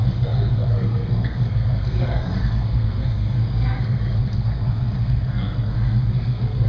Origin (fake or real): fake